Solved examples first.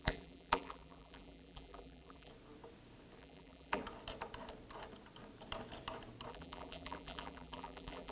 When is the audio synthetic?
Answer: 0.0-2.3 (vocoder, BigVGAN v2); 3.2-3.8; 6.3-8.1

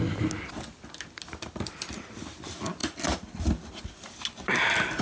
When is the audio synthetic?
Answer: none

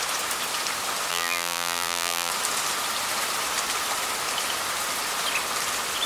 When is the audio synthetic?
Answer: 1.1-2.3 (vocoder, BigVGAN v2)